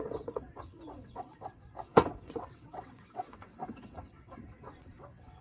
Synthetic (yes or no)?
yes